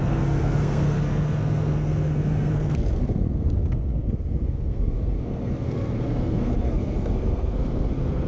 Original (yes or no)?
no